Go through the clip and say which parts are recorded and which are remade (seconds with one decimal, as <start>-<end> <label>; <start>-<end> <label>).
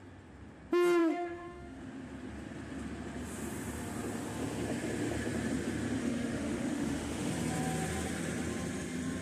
0.0-1.0 recorded; 1.0-1.8 remade; 1.8-6.0 recorded; 6.0-7.3 remade; 7.3-9.2 recorded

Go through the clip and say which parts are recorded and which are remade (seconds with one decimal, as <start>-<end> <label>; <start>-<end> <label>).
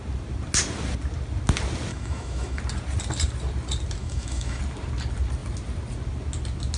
0.0-1.9 recorded; 1.9-2.6 remade; 2.6-4.0 recorded; 4.0-4.6 remade; 4.6-6.8 recorded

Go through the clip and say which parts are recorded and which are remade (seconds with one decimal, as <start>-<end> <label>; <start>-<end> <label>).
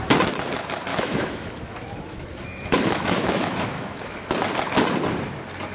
0.0-0.9 recorded; 0.9-4.3 remade; 4.3-5.7 recorded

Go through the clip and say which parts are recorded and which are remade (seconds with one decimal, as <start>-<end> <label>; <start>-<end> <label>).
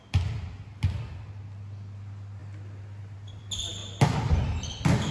0.0-5.1 recorded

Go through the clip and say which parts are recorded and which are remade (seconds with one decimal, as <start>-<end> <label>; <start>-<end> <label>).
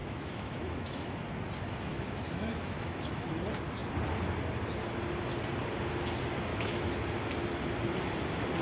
0.0-1.5 remade; 1.5-1.9 recorded; 1.9-3.3 remade; 3.3-6.5 recorded; 6.5-7.0 remade; 7.0-8.6 recorded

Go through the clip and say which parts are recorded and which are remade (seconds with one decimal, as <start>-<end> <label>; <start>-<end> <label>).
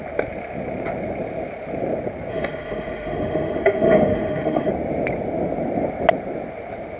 0.0-2.3 recorded; 2.3-4.7 remade; 4.7-7.0 recorded